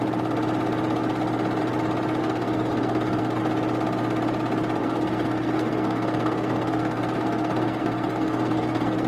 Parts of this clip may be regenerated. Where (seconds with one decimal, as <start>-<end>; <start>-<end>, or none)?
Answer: 2.2-3.4; 4.8-9.1